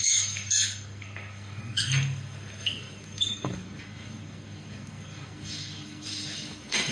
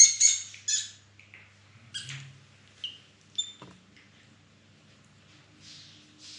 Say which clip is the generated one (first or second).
first